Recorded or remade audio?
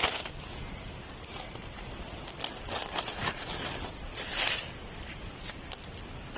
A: recorded